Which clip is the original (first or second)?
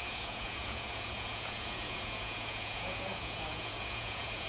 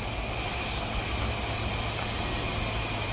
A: second